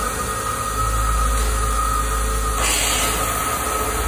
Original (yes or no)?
yes